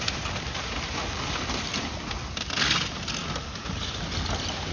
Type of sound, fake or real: real